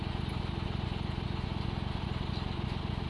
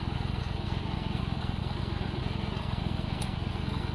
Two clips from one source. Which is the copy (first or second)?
second